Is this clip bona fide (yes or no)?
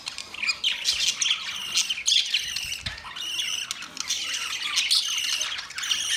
yes